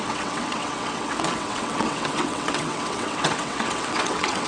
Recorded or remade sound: remade